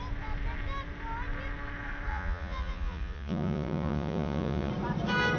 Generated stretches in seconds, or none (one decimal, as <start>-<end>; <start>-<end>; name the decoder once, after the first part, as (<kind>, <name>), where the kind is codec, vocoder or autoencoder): 2.1-4.7 (vocoder, Vocos)